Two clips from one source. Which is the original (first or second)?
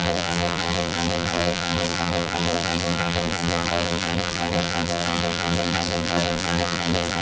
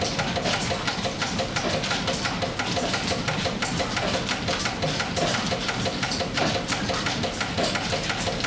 second